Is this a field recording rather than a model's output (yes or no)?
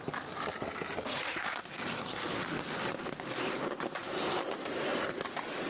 yes